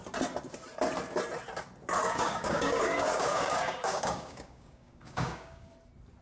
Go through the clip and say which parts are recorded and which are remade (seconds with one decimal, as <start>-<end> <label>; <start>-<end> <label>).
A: 0.0-2.0 recorded; 2.0-5.7 remade; 5.7-6.2 recorded